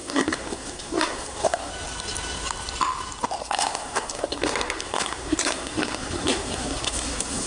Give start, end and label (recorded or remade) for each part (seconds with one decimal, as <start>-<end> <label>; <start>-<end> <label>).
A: 0.0-1.7 remade; 1.7-3.4 recorded; 3.4-7.5 remade